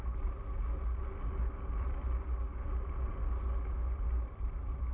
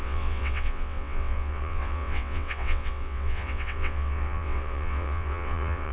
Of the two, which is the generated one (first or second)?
second